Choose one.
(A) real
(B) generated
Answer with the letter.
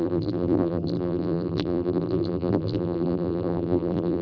B